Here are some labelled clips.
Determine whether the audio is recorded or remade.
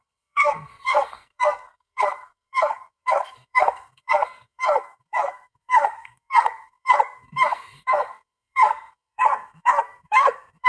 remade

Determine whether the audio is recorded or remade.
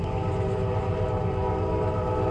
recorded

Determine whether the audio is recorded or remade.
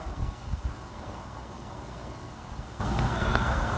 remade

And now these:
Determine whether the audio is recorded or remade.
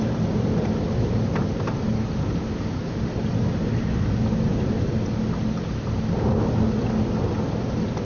recorded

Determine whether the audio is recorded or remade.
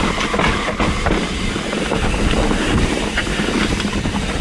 recorded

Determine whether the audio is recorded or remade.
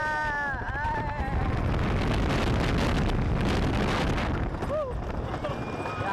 recorded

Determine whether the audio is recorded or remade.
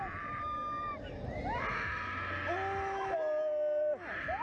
recorded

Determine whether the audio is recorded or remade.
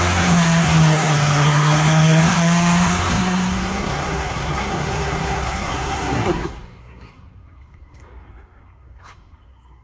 remade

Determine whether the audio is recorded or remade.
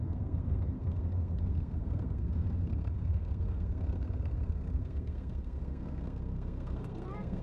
remade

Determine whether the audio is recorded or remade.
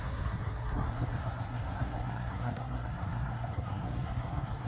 remade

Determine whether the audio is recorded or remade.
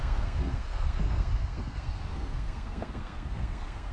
remade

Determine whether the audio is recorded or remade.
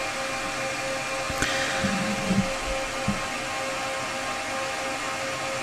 recorded